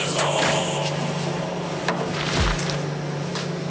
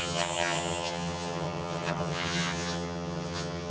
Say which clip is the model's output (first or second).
second